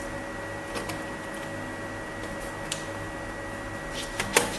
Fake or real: real